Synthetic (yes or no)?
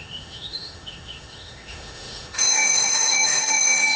yes